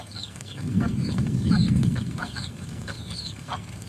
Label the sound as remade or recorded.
remade